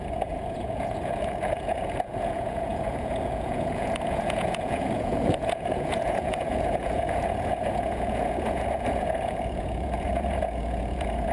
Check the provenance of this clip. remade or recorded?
remade